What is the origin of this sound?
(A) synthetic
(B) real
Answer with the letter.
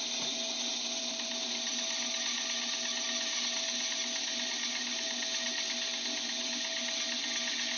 B